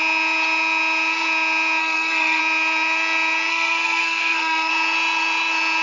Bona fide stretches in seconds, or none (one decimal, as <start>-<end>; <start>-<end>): 0.0-1.8; 2.4-3.5; 4.7-5.8